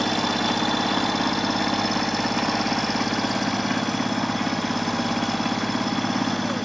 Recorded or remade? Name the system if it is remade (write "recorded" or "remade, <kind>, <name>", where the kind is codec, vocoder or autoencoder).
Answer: recorded